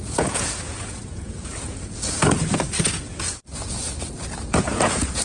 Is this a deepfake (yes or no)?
yes